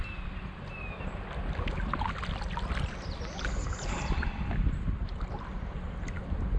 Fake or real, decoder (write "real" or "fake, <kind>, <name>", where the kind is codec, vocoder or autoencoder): real